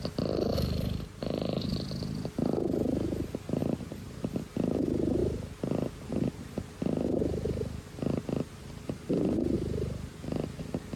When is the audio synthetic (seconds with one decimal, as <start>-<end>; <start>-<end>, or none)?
0.5-1.7; 3.6-4.2

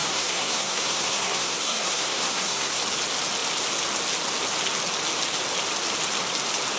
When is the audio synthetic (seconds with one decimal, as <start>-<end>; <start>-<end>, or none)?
0.0-2.8

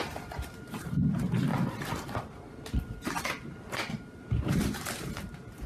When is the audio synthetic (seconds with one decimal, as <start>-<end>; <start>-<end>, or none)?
0.0-1.5; 3.9-5.7

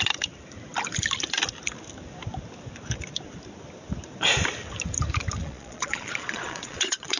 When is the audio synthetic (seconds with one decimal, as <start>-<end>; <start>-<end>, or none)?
5.4-7.2

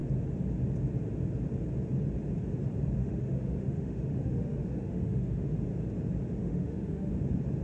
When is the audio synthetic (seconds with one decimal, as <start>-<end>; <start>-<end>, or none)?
3.0-5.5; 6.4-7.1

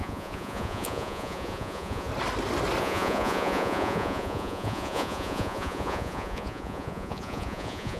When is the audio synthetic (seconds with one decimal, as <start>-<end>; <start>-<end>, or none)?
0.0-2.1; 2.8-8.0

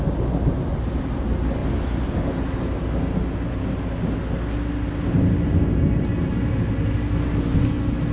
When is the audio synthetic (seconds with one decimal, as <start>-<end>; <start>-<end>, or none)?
none

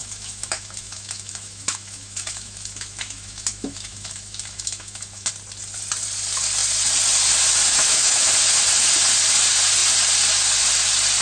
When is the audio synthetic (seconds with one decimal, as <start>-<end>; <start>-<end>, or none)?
0.0-5.3; 7.7-8.3